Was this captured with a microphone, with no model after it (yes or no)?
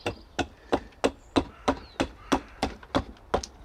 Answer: yes